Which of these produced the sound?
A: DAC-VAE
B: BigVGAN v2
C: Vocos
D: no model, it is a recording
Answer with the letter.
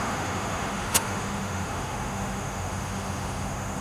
A